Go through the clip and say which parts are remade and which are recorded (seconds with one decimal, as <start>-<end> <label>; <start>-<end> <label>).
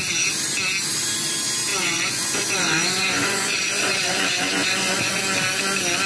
0.0-1.7 recorded; 1.7-5.2 remade; 5.2-6.1 recorded